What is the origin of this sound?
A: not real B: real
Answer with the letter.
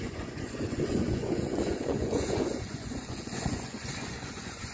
A